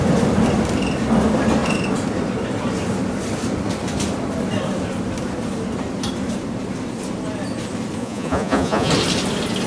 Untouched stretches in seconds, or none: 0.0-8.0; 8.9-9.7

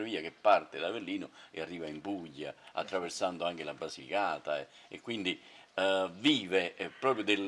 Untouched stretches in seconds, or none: 0.0-7.5

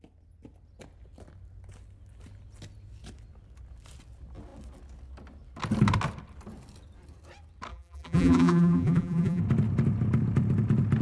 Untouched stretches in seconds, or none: 0.0-7.7; 9.4-11.0

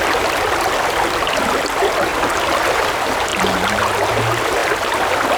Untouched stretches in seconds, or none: 0.0-2.1; 2.9-3.3; 3.8-5.4

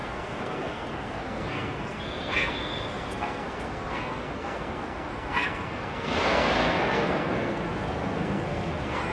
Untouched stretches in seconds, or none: none